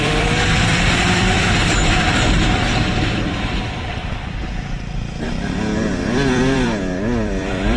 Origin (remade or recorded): remade